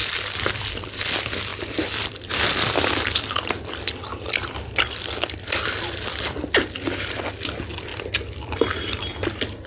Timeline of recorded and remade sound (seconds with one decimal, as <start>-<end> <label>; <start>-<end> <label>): 0.0-1.5 recorded; 1.5-6.5 remade; 6.5-7.9 recorded; 7.9-9.0 remade; 9.0-9.7 recorded